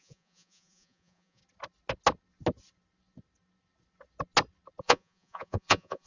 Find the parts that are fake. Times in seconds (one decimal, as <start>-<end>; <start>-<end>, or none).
0.0-1.4; 4.8-6.1